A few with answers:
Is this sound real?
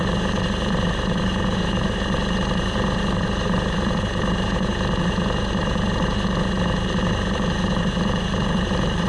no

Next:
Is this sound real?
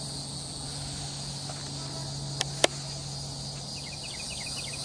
yes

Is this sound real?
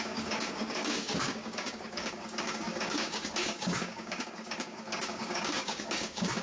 no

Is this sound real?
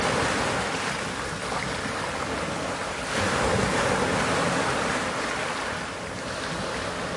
yes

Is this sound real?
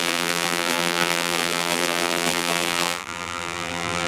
no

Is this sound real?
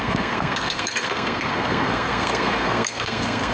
no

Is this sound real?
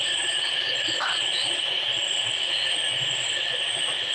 yes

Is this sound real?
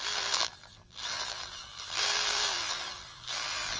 no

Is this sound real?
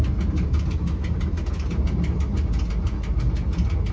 yes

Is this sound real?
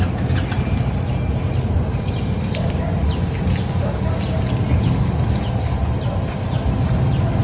yes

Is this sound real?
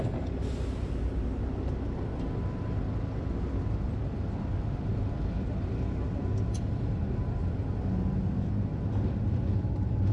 yes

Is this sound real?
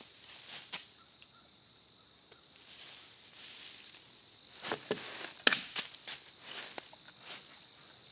yes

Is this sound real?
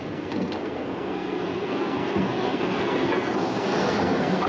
no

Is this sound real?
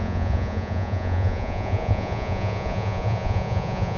no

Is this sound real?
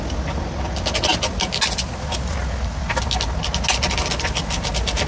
yes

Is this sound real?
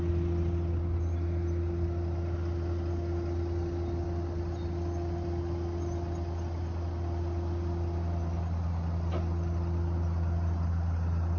yes